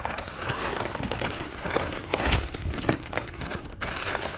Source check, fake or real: fake